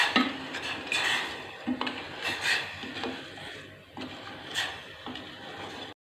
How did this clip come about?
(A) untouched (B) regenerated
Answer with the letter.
A